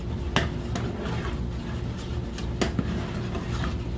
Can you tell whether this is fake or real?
real